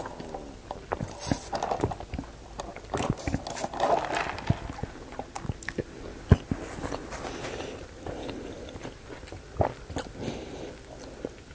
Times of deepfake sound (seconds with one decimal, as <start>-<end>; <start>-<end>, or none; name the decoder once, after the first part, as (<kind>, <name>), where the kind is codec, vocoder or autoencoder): none